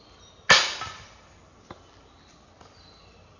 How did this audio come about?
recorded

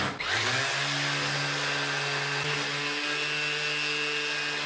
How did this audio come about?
recorded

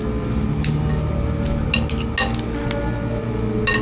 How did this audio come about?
recorded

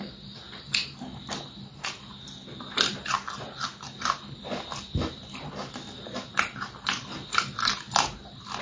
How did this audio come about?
recorded